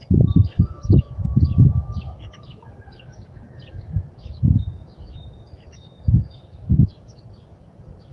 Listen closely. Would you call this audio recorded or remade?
remade